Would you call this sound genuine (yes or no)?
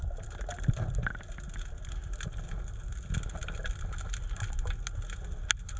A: yes